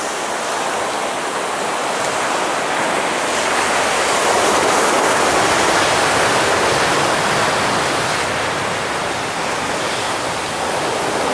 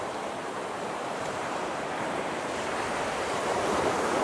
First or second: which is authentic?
first